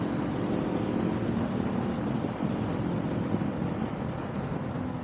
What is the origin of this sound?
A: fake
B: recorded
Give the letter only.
B